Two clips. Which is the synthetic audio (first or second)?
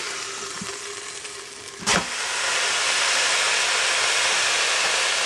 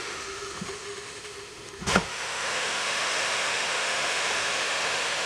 second